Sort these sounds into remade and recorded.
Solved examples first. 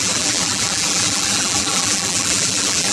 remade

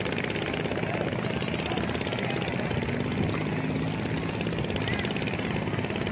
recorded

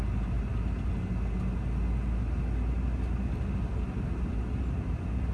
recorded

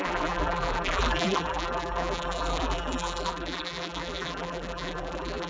remade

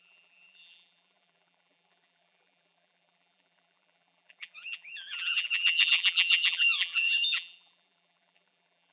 remade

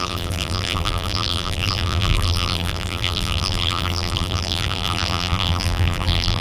remade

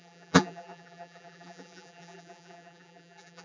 remade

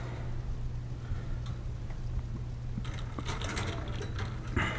recorded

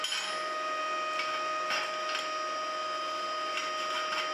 recorded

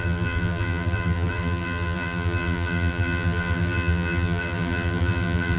remade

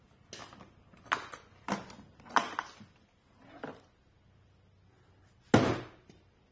recorded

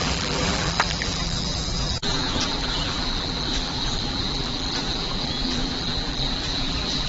remade